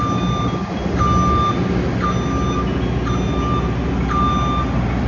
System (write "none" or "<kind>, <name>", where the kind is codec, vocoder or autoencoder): none